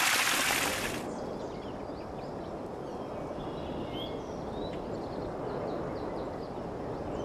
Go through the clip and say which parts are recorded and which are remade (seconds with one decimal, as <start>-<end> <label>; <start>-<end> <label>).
0.0-7.2 recorded